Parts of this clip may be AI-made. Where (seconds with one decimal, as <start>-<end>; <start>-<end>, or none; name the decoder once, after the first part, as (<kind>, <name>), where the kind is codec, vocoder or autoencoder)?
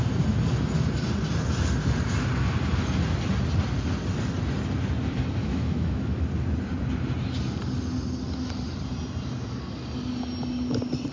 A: 5.4-6.2 (autoencoder, DAC-VAE)